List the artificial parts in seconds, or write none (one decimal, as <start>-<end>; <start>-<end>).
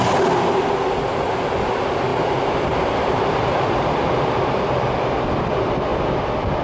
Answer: 2.1-3.9